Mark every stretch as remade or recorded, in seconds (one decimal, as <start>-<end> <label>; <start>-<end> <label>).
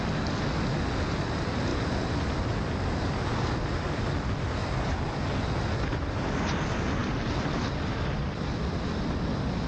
0.0-1.7 recorded; 1.7-5.0 remade; 5.0-9.7 recorded